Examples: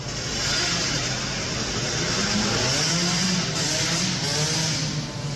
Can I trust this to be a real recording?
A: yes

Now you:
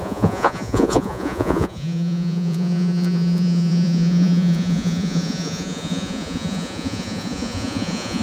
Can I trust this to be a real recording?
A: no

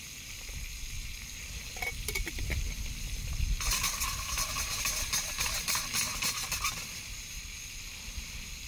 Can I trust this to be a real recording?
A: yes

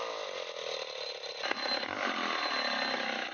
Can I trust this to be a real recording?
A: yes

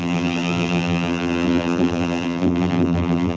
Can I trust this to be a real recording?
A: no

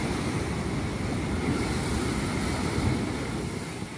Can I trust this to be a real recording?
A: yes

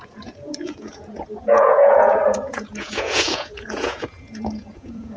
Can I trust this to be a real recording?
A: no